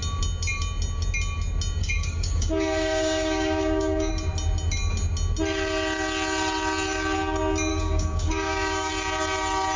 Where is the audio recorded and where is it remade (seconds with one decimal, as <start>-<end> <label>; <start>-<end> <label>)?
0.0-1.8 recorded; 1.8-4.1 remade; 4.1-7.7 recorded; 7.7-8.9 remade; 8.9-9.8 recorded